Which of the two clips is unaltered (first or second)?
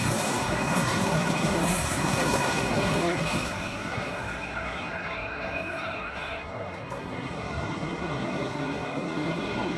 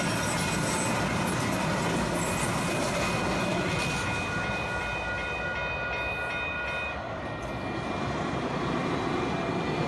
second